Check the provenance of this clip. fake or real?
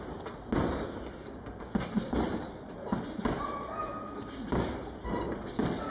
real